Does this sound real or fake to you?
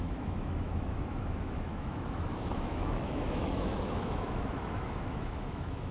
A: fake